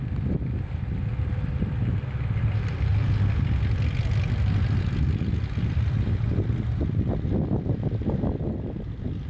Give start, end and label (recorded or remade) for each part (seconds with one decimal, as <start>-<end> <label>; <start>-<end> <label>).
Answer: 0.0-2.9 remade; 2.9-4.8 recorded; 4.8-9.3 remade